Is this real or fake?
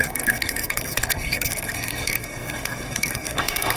fake